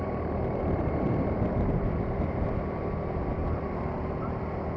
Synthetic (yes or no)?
no